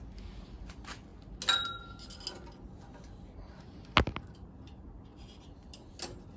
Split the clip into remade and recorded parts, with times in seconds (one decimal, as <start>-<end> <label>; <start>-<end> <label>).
0.0-6.4 recorded

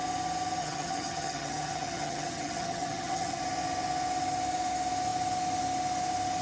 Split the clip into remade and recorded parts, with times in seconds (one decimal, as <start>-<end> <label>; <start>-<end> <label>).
0.0-0.6 recorded; 0.6-3.4 remade; 3.4-6.4 recorded

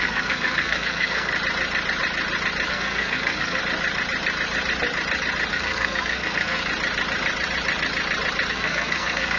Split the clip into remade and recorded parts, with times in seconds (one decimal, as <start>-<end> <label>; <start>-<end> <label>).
0.0-1.3 remade; 1.3-2.7 recorded; 2.7-3.6 remade; 3.6-5.5 recorded; 5.5-6.6 remade; 6.6-8.5 recorded; 8.5-9.4 remade